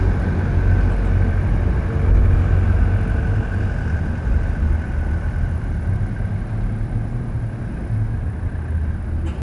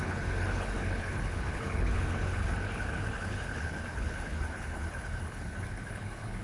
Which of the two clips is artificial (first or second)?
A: second